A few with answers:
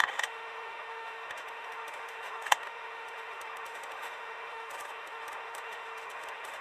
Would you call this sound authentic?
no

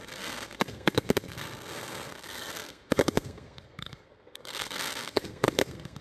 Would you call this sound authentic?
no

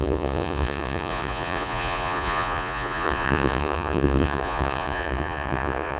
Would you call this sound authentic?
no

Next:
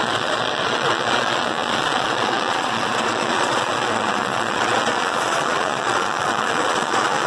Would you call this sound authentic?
no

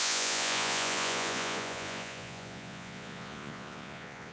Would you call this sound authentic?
no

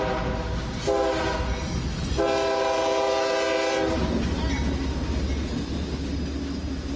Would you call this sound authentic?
yes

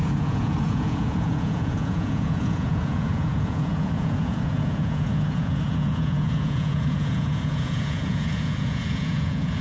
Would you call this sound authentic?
no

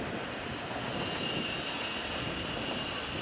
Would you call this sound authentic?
yes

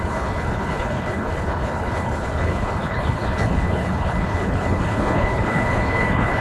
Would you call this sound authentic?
no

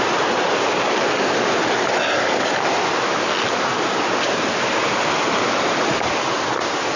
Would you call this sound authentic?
yes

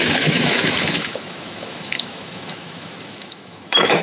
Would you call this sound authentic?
no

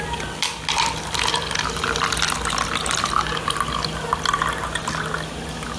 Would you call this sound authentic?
yes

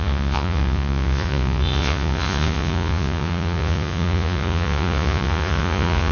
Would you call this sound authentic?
no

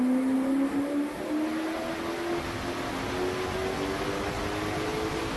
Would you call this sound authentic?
yes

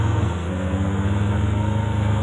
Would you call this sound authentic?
no